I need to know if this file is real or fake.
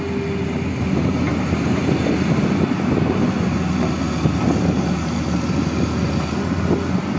real